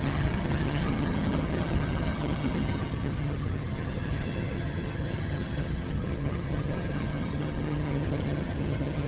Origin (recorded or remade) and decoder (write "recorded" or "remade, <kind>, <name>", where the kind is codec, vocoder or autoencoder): remade, vocoder, HiFi-GAN